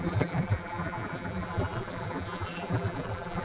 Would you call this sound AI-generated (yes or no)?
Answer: yes